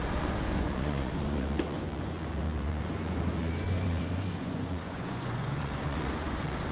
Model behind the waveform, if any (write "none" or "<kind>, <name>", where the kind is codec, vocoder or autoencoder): vocoder, Vocos